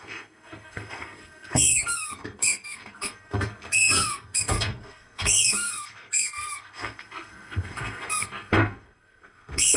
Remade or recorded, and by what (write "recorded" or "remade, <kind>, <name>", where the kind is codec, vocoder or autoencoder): remade, codec, SNAC